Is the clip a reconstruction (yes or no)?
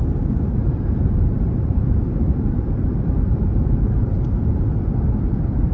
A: yes